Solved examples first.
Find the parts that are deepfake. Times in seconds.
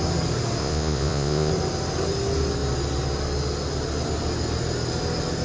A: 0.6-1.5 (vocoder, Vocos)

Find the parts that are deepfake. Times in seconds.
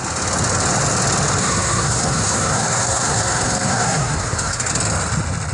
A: 1.4-4.7 (codec, SNAC)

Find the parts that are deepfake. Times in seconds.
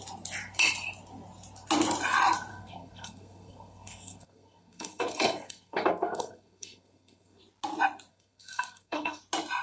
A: 2.5-7.4 (codec, SNAC); 8.1-9.2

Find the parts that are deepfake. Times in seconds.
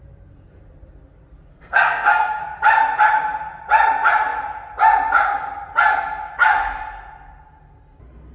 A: 1.5-2.4 (codec, SNAC)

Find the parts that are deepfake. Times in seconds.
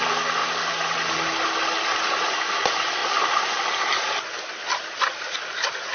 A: none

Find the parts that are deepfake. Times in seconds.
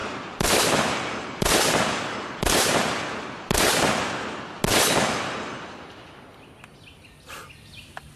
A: 0.0-2.8 (vocoder, BigVGAN v2)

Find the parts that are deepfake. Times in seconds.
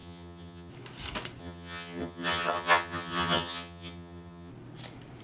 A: 0.0-0.7 (vocoder, HiFi-GAN); 1.4-4.5